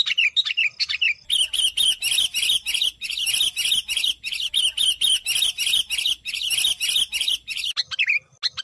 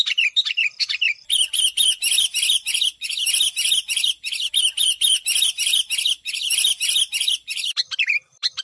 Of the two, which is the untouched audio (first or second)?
first